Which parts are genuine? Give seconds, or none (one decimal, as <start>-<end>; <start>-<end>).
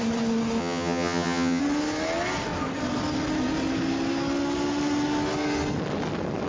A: 0.0-0.6; 1.6-6.5